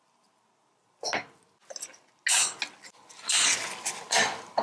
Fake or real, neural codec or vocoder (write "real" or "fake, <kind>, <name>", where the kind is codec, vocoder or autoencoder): real